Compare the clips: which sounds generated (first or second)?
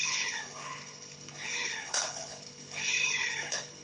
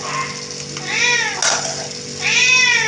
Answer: first